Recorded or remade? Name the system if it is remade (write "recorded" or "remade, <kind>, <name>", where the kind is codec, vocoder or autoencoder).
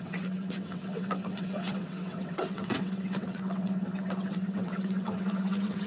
remade, vocoder, WaveNeXt